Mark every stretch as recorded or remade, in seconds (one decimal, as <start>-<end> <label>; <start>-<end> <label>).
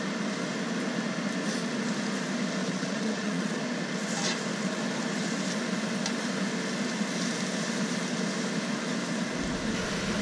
0.0-2.6 recorded; 2.6-3.6 remade; 3.6-10.2 recorded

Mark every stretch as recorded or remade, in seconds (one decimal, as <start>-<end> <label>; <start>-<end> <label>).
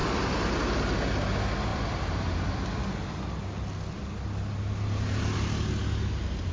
0.0-0.6 remade; 0.6-1.7 recorded; 1.7-2.9 remade; 2.9-6.5 recorded